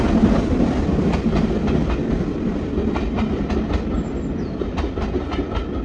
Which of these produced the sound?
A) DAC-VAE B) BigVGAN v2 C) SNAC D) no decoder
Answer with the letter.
D